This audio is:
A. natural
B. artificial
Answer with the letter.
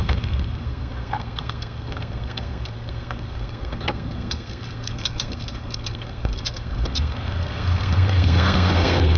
B